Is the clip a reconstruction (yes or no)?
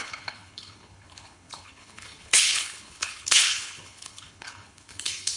yes